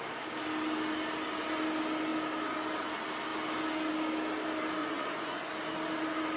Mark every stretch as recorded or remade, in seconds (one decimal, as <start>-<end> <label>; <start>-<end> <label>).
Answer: 0.0-4.8 recorded; 4.8-5.5 remade; 5.5-6.4 recorded